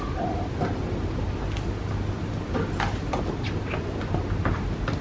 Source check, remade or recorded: recorded